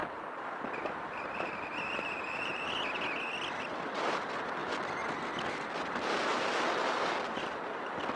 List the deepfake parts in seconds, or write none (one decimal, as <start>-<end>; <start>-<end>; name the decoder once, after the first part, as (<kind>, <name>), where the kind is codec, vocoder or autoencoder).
0.0-2.6 (vocoder, BigVGAN v2)